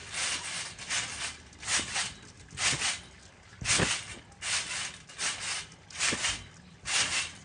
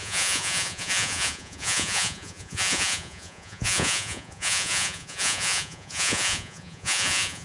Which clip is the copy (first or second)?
second